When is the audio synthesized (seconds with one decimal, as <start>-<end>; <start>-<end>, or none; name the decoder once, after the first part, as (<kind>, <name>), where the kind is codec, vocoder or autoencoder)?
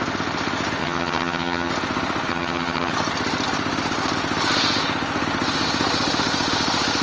0.8-1.7 (vocoder, HiFi-GAN); 2.3-2.9